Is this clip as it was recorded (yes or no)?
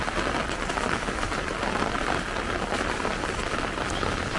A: yes